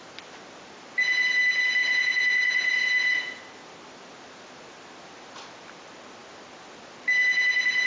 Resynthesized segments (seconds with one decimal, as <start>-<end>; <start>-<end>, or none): 1.8-3.4